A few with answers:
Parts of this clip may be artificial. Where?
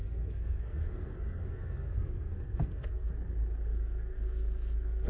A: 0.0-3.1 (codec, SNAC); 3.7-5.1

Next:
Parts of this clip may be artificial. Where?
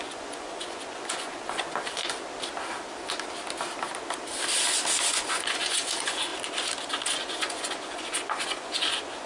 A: 0.0-2.0 (vocoder, Vocos); 5.1-6.3; 7.0-9.3